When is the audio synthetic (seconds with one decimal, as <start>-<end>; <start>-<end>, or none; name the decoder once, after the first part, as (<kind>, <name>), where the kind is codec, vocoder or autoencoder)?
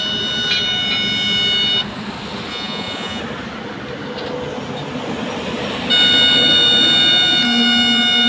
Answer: 2.5-3.2 (vocoder, Vocos)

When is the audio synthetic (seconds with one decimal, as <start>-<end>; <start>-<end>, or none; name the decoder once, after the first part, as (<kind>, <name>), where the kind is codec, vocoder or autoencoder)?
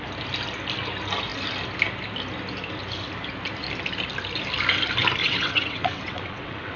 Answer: 5.2-6.8 (vocoder, WaveNeXt)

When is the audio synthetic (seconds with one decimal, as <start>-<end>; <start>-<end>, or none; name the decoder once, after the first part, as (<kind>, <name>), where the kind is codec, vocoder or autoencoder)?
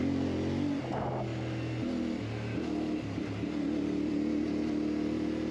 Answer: none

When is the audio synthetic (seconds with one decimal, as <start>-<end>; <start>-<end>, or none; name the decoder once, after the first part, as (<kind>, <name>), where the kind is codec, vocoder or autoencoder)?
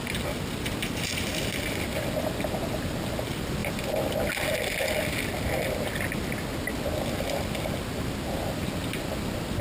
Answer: 1.3-2.2 (vocoder, BigVGAN v2)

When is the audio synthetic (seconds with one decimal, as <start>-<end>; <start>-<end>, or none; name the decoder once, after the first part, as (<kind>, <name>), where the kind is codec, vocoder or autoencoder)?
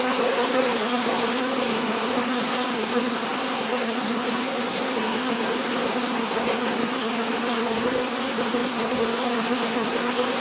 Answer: 0.0-10.4 (codec, SNAC)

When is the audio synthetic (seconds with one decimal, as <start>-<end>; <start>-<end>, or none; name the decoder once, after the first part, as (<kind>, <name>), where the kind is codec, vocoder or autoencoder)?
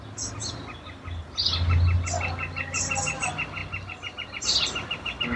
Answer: none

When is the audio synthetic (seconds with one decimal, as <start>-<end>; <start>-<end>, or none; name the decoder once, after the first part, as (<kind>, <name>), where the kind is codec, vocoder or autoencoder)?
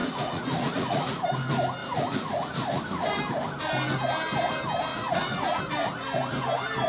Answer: 0.0-1.2 (vocoder, Vocos); 1.8-3.2; 4.9-5.6